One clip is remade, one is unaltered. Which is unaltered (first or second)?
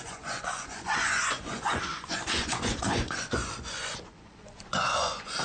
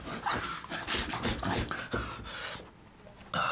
second